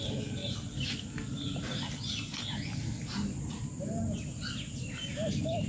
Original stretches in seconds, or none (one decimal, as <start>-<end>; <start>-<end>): 0.0-5.7